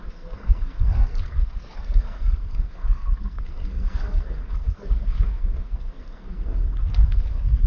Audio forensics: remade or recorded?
remade